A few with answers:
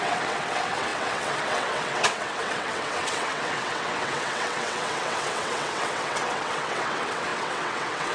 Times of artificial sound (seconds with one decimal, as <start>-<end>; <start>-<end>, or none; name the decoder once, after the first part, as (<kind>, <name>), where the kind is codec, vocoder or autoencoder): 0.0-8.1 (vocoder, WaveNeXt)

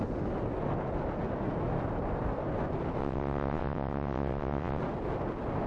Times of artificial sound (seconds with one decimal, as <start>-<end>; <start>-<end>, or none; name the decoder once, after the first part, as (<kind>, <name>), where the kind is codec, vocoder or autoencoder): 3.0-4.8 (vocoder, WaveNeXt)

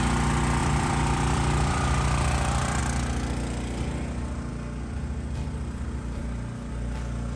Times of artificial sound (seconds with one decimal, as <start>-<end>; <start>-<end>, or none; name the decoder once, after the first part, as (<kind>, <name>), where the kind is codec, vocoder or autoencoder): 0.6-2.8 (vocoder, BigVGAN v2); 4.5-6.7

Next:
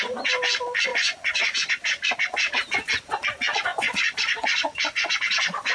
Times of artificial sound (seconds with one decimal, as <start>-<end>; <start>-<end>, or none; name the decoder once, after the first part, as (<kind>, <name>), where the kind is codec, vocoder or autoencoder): 0.9-1.7 (vocoder, Vocos); 3.7-5.2

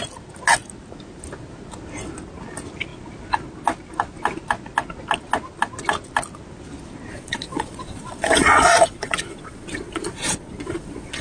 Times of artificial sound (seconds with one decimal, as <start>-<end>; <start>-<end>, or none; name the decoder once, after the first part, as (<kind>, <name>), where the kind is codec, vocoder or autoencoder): 7.1-11.2 (vocoder, Vocos)